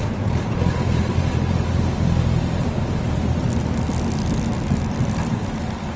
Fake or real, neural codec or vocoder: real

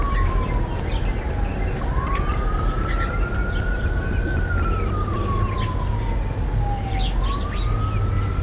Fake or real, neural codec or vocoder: real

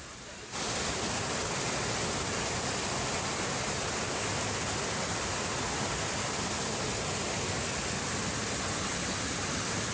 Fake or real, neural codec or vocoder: real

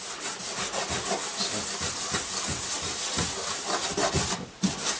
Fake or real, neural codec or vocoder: real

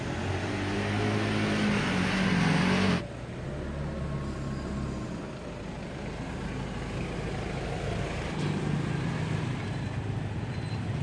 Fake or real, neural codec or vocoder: real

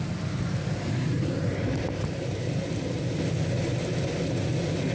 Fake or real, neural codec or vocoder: real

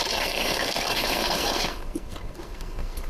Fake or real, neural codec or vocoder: fake, codec, SNAC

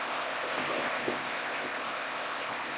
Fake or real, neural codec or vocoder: fake, codec, ZipCodec